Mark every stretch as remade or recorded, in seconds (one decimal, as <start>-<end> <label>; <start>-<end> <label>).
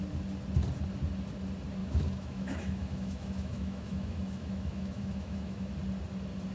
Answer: 0.0-1.8 recorded; 1.8-5.7 remade; 5.7-6.5 recorded